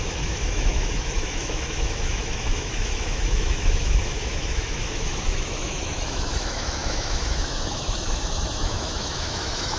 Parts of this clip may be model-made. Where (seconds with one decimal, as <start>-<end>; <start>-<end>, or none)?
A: 0.0-9.8